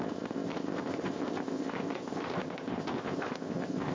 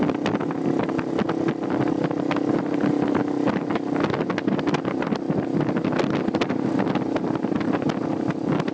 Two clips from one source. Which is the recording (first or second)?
second